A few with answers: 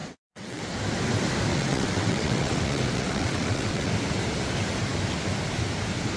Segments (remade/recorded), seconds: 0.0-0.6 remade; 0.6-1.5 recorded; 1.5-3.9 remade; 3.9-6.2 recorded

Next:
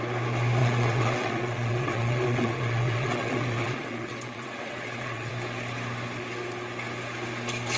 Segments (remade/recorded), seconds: 0.0-0.6 recorded; 0.6-5.3 remade; 5.3-7.8 recorded